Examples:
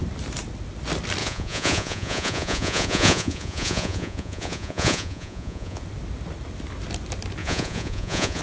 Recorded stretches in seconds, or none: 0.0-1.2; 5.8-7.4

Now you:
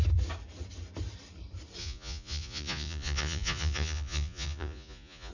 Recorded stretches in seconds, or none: 0.0-1.8

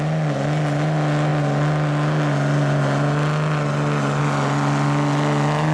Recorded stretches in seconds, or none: 0.0-5.7

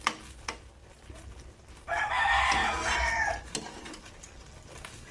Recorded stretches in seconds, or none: 0.0-5.1

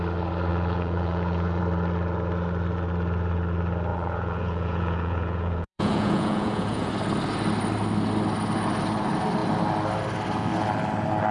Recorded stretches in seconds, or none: 0.0-0.5; 1.6-3.9; 6.9-11.3

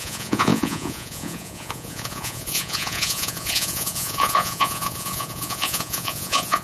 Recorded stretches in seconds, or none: none